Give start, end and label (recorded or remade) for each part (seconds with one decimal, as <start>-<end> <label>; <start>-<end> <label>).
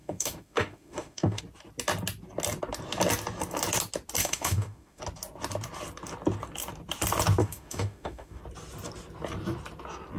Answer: 0.0-1.4 remade; 1.4-4.2 recorded; 4.2-5.0 remade; 5.0-7.4 recorded; 7.4-8.4 remade; 8.4-10.2 recorded